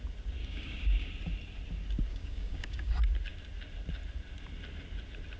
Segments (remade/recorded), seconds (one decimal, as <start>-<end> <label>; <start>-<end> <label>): 0.0-0.4 recorded; 0.4-1.1 remade; 1.1-2.1 recorded; 2.1-2.9 remade; 2.9-5.4 recorded